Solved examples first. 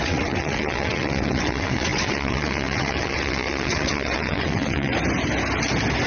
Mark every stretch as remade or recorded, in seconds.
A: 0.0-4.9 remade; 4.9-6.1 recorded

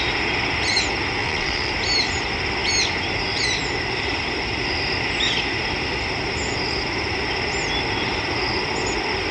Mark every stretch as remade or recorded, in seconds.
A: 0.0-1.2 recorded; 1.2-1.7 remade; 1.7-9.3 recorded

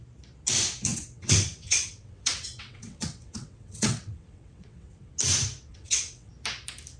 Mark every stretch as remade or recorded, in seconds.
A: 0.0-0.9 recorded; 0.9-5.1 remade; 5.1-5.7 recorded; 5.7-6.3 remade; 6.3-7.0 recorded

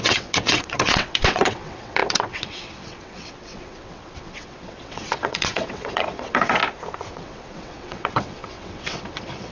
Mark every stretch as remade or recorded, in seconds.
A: 0.0-6.6 remade; 6.6-7.1 recorded; 7.1-9.5 remade

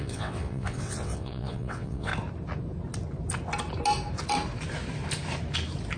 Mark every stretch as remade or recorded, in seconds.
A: 0.0-2.1 remade; 2.1-6.0 recorded

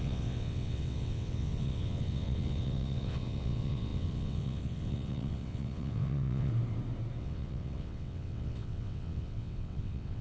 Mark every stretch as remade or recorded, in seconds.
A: 0.0-6.5 remade; 6.5-7.2 recorded; 7.2-10.2 remade

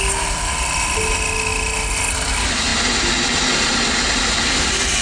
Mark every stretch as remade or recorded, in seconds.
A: 0.0-5.0 recorded

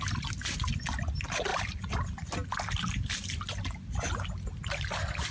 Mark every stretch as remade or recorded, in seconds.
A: 0.0-5.3 recorded